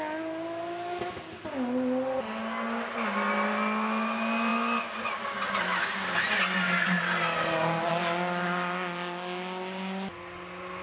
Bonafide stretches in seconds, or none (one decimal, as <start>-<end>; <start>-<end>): 0.0-10.8